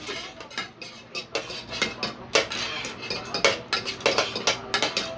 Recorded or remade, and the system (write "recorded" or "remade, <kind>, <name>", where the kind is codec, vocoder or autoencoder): recorded